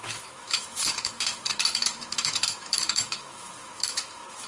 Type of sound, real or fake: fake